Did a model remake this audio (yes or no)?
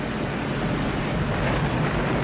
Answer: no